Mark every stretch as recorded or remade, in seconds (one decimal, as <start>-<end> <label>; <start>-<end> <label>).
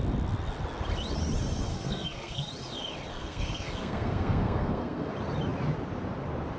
0.0-1.7 recorded; 1.7-2.5 remade; 2.5-3.1 recorded; 3.1-5.1 remade; 5.1-6.6 recorded